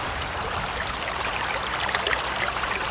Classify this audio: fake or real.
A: fake